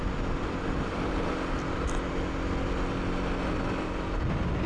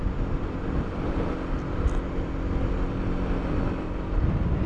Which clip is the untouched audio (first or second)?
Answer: first